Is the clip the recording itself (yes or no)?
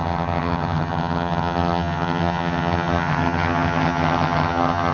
no